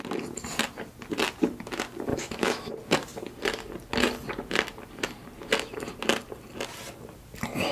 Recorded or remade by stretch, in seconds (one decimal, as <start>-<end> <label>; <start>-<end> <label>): 0.0-2.1 recorded; 2.1-2.7 remade; 2.7-7.7 recorded